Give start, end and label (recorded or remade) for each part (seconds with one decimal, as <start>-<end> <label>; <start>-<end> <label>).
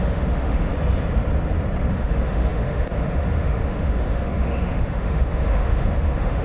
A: 0.0-0.7 remade; 0.7-1.9 recorded; 1.9-6.4 remade